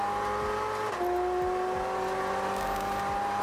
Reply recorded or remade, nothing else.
recorded